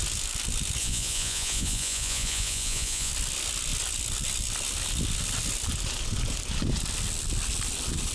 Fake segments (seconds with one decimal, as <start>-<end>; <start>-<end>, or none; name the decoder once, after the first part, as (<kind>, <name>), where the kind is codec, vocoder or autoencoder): 0.8-3.1 (vocoder, Vocos)